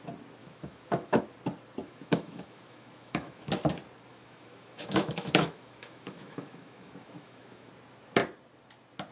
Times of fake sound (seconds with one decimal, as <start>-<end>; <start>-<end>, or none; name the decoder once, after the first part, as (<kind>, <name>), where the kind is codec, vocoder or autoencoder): 0.4-1.2 (autoencoder, DAC-VAE); 1.8-3.5; 4.1-7.7